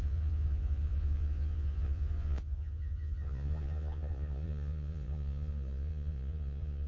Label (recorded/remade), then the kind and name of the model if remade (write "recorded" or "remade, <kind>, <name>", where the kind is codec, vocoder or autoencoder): remade, vocoder, Vocos